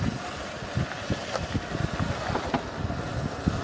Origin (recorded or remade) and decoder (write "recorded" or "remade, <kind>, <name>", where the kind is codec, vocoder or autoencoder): recorded